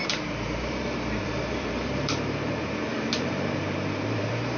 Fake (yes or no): yes